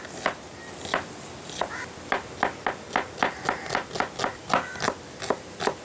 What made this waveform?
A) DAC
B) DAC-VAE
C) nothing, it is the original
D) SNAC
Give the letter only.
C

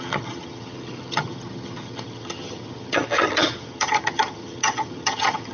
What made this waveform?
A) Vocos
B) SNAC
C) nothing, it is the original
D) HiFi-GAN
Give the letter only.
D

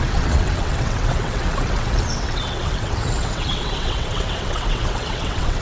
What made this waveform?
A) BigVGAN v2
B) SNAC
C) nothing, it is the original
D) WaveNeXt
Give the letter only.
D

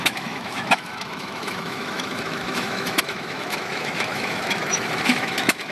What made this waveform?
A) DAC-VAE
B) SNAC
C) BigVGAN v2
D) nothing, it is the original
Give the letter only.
A